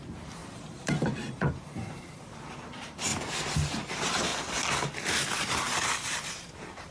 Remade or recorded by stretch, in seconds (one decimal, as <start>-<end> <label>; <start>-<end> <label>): 0.0-3.1 remade; 3.1-3.9 recorded; 3.9-4.3 remade; 4.3-5.8 recorded; 5.8-6.9 remade